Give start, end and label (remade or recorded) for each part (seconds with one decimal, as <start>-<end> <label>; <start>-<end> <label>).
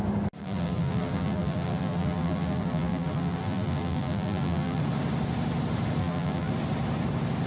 0.0-0.4 recorded; 0.4-4.8 remade; 4.8-6.0 recorded; 6.0-6.5 remade; 6.5-7.5 recorded